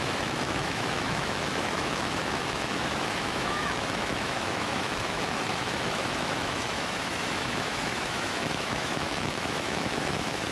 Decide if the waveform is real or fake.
fake